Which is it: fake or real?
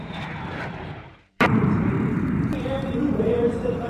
fake